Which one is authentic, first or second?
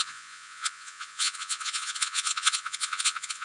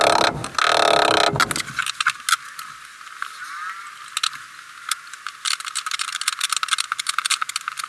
second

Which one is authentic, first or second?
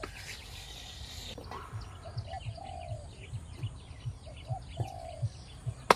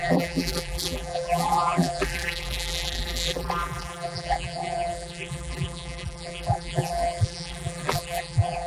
first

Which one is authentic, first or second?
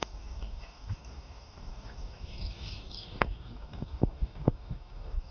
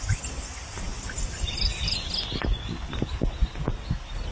second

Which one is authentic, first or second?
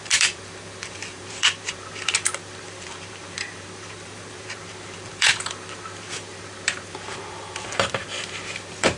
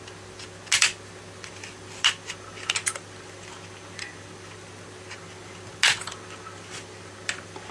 second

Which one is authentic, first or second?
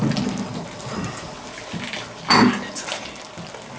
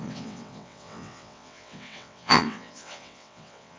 first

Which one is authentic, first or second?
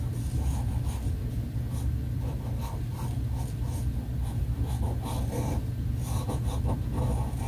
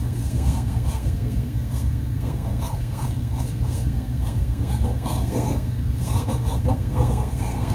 first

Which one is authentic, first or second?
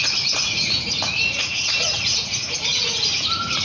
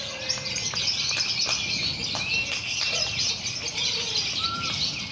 second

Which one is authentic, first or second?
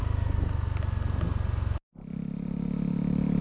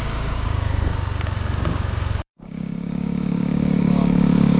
first